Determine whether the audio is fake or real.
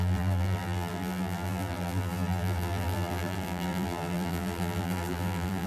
fake